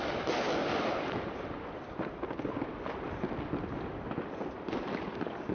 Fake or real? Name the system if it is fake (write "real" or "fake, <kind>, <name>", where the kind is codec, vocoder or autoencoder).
real